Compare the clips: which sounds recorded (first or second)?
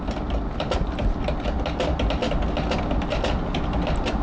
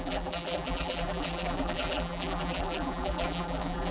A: first